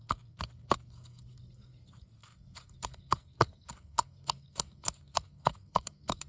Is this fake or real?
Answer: fake